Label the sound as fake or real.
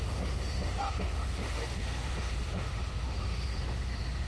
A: fake